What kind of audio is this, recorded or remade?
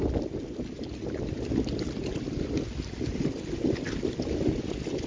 recorded